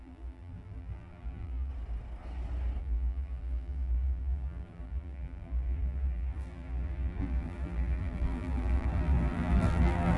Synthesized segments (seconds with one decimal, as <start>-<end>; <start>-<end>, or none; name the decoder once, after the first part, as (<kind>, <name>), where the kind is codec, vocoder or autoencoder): 0.0-1.7 (vocoder, BigVGAN v2); 2.8-10.2